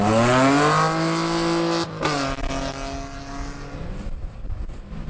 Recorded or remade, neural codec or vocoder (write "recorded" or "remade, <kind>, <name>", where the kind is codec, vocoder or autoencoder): recorded